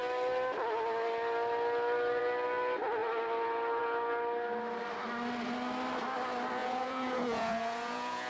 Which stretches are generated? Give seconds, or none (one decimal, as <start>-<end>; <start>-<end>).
6.6-8.3